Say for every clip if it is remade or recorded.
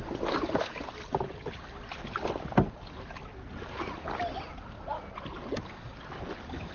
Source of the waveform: recorded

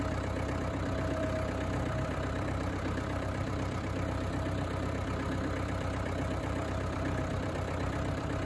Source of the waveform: remade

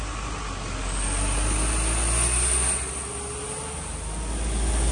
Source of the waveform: recorded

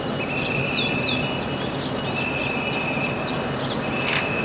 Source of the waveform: recorded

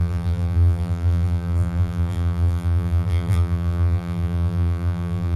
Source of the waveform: remade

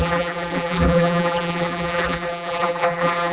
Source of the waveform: remade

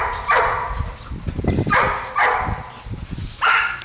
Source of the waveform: recorded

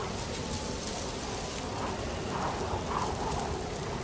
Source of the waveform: recorded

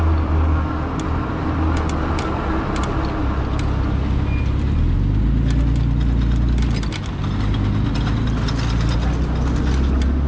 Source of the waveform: recorded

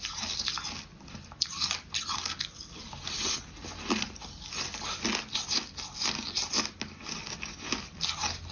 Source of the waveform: recorded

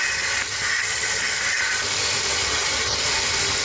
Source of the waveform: recorded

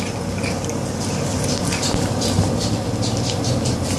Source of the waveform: remade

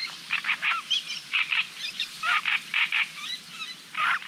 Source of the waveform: remade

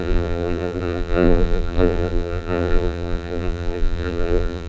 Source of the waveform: remade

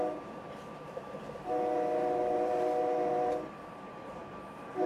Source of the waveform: remade